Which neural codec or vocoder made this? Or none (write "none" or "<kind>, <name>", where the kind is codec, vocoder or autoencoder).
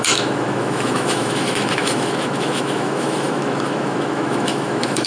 autoencoder, DAC-VAE